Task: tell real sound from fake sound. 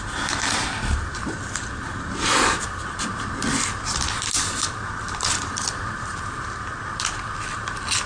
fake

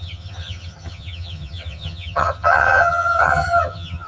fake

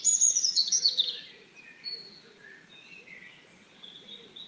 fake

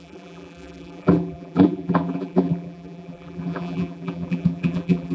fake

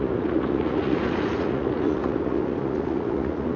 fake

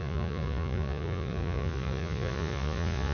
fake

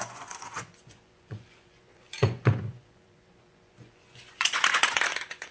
fake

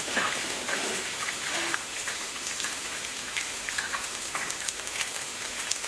fake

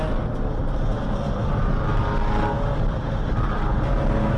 real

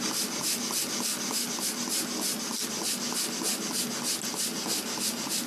real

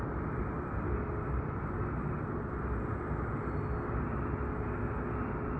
real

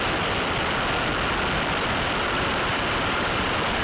real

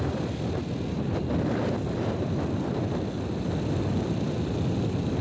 real